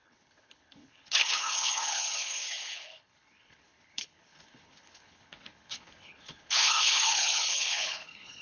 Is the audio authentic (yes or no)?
no